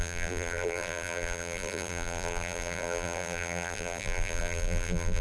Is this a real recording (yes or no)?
no